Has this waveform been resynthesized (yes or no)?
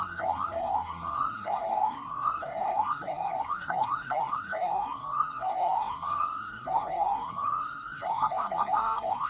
yes